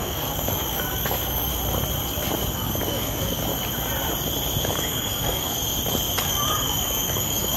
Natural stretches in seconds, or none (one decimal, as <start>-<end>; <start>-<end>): 1.5-2.5; 3.5-4.6; 5.6-6.2